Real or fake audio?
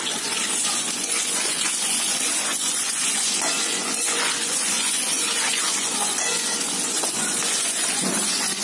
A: fake